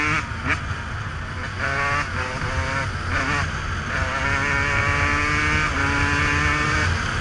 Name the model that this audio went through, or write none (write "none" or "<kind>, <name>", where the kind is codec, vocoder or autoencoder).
none